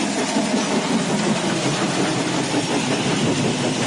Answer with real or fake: real